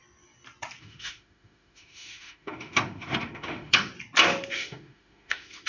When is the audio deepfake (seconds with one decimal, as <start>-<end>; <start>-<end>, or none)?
0.8-3.9; 4.5-5.7